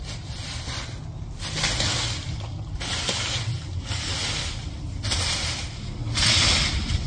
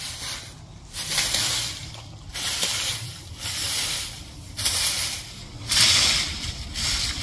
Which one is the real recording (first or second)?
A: first